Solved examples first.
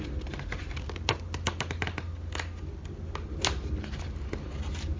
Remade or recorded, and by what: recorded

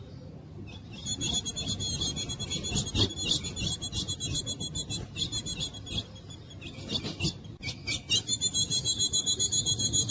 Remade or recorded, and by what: recorded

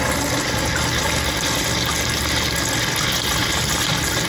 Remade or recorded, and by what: recorded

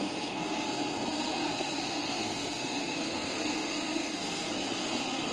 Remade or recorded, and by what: remade, codec, SNAC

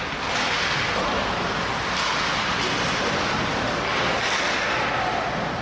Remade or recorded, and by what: recorded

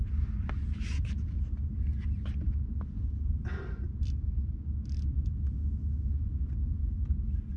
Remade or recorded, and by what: recorded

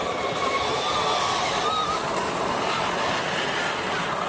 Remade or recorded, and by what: recorded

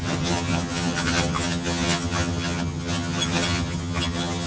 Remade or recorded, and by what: remade, vocoder, HiFi-GAN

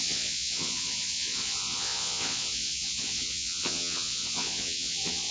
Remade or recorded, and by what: remade, vocoder, Vocos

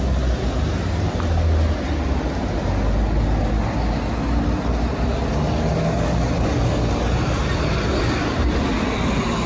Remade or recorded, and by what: recorded